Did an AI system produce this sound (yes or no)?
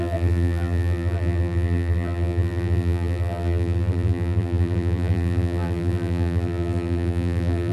yes